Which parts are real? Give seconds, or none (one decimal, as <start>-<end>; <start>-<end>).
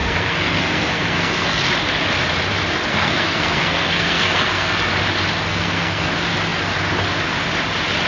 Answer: 1.6-2.9; 4.9-5.5; 6.1-8.1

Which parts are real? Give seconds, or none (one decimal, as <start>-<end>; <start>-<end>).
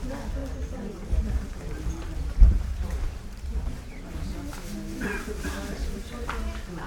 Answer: 0.0-0.4; 4.3-5.8; 6.4-6.9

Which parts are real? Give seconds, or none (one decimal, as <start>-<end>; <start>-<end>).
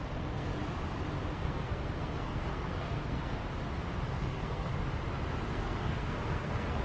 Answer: 0.5-1.3; 3.4-4.1; 4.7-5.5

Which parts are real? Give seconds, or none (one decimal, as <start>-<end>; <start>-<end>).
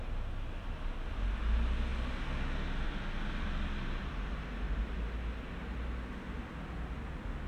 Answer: 0.0-7.5